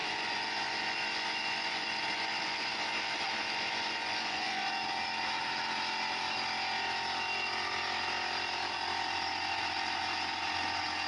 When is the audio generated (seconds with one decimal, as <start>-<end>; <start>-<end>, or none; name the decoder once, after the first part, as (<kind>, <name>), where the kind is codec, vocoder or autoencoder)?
0.0-4.7 (vocoder, Vocos)